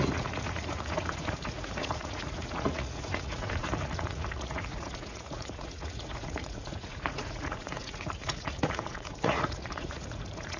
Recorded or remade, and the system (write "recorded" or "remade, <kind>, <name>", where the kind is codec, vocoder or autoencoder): remade, vocoder, Vocos